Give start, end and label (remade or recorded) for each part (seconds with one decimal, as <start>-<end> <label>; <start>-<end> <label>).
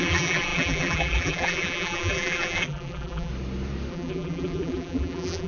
0.0-3.3 remade; 3.3-3.9 recorded; 3.9-5.5 remade